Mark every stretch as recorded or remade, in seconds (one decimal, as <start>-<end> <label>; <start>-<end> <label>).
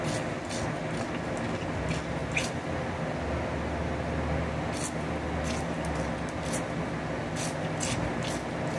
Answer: 0.0-8.8 recorded